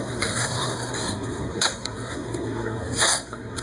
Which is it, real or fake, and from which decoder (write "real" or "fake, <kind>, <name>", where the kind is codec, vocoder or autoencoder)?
fake, codec, SNAC